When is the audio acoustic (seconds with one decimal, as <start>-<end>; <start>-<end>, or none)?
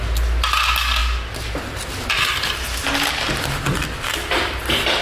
0.0-5.0